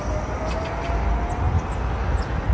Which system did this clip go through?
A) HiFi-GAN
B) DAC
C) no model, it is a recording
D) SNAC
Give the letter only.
C